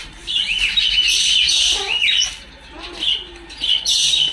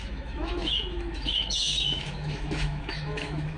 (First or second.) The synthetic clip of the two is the second